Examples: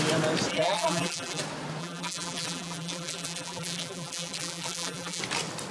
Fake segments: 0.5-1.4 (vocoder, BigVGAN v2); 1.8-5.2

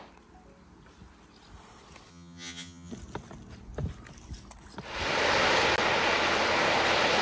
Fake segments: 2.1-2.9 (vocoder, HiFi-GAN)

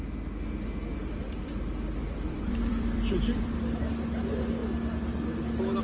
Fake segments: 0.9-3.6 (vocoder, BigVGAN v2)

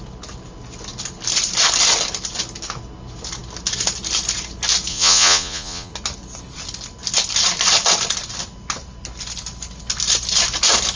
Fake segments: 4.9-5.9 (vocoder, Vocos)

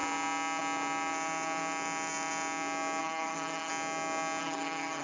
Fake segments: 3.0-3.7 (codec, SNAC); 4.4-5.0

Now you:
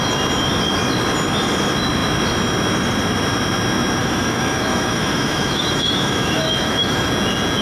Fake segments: 4.0-7.1 (autoencoder, DAC-VAE)

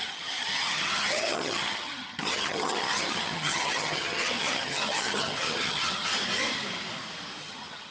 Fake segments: 0.0-6.1 (vocoder, HiFi-GAN); 7.4-7.9

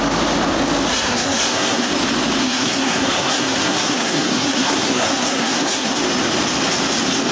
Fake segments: 0.9-1.9 (codec, SNAC); 2.4-6.0